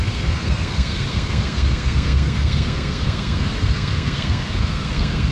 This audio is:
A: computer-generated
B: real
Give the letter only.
A